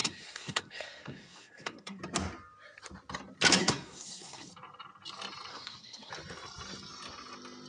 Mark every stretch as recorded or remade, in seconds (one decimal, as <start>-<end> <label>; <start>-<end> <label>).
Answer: 0.0-2.0 remade; 2.0-3.6 recorded; 3.6-4.5 remade; 4.5-5.5 recorded; 5.5-6.1 remade; 6.1-7.7 recorded